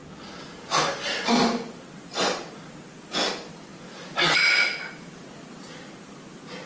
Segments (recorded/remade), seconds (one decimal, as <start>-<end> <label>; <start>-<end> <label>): 0.0-6.7 recorded